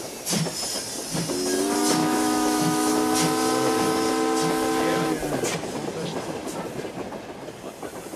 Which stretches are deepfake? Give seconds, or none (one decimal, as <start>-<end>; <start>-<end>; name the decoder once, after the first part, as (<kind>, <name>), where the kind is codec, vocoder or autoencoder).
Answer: 2.0-2.9 (autoencoder, DAC-VAE)